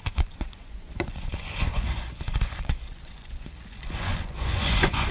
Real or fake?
fake